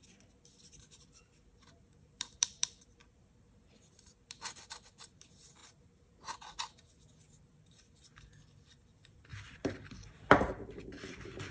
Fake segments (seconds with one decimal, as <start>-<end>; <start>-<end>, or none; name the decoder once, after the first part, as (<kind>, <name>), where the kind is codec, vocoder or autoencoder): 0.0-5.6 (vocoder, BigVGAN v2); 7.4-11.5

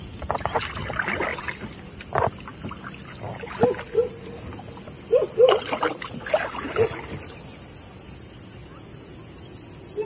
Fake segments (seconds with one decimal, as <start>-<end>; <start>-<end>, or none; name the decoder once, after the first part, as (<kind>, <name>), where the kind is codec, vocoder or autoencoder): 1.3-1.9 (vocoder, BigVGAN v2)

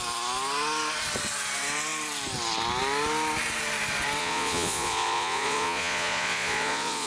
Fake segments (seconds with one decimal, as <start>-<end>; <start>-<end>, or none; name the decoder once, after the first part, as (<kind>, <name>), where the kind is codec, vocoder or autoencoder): 4.2-7.1 (vocoder, Vocos)

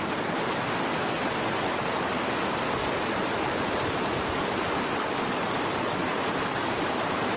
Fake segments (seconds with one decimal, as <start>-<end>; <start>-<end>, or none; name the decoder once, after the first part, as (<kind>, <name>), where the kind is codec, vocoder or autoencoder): 2.8-4.7 (vocoder, BigVGAN v2)

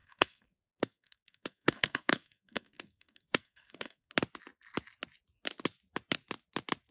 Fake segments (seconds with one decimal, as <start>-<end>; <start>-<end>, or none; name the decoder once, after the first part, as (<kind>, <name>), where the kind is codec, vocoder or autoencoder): 0.0-4.1 (codec, SNAC)